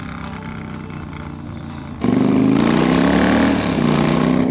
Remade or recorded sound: recorded